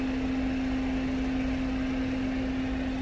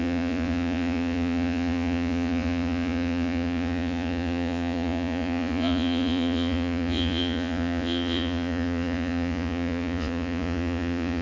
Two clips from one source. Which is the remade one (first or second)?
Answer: second